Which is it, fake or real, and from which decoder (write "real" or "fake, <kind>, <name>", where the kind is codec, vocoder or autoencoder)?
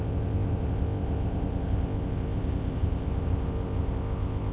fake, codec, ZipCodec